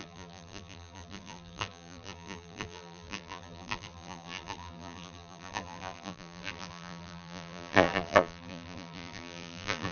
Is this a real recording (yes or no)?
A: no